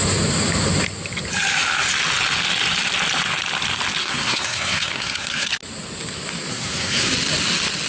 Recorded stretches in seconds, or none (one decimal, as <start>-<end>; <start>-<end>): 0.0-4.0; 5.5-6.5; 7.1-7.9